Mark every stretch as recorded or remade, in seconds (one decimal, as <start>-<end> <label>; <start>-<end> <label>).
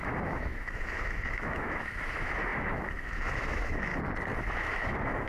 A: 0.0-3.9 remade; 3.9-4.4 recorded; 4.4-5.3 remade